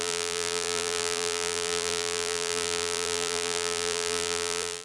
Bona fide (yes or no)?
no